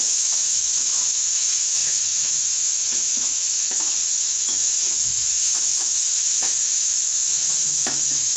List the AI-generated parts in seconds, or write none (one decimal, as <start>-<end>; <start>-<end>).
0.0-8.4